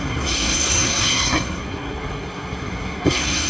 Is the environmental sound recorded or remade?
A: remade